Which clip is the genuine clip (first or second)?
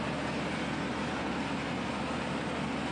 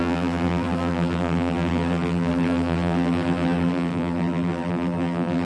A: first